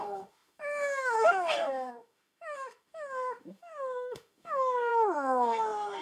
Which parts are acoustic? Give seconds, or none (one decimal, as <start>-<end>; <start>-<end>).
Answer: none